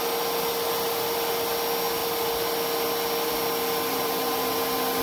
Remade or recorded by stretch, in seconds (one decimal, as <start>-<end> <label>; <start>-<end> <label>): 0.0-3.9 recorded; 3.9-5.0 remade